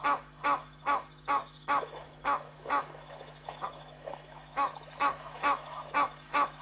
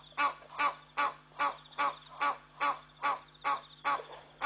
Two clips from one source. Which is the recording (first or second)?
second